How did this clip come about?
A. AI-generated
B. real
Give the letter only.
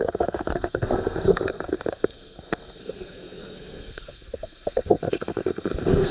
A